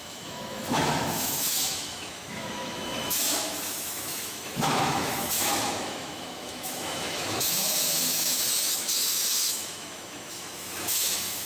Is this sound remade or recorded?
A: remade